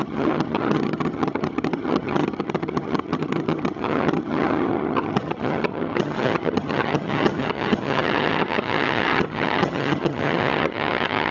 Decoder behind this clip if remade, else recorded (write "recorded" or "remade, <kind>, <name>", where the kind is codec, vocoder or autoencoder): remade, vocoder, HiFi-GAN